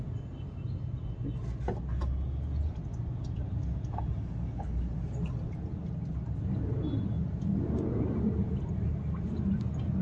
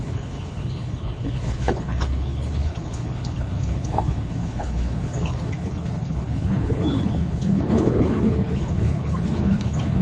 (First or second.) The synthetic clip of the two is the second